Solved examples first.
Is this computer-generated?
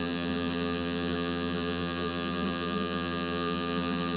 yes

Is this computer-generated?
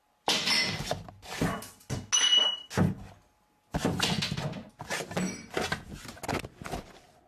no